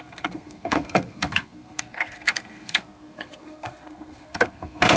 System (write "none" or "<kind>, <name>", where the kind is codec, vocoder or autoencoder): codec, SNAC